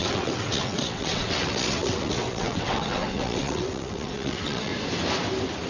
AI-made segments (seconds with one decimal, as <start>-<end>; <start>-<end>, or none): 0.0-4.7